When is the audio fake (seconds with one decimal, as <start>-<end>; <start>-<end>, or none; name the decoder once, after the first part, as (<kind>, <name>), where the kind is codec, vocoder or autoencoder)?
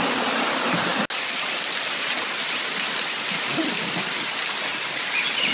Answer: none